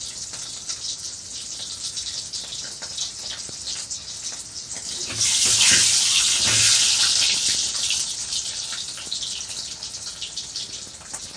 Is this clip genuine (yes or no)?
yes